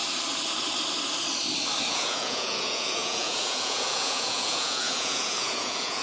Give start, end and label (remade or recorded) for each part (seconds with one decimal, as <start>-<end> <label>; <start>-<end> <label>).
0.0-1.9 recorded; 1.9-6.0 remade